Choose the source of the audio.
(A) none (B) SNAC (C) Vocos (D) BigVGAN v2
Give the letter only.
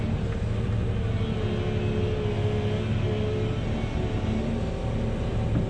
A